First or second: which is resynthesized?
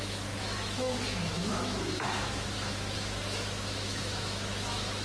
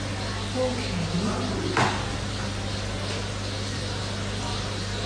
first